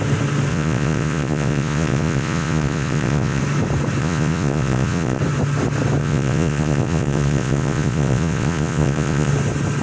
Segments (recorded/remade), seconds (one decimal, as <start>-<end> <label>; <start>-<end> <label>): 0.0-0.5 recorded; 0.5-3.4 remade; 3.4-4.0 recorded; 4.0-5.2 remade; 5.2-6.0 recorded; 6.0-9.3 remade; 9.3-9.8 recorded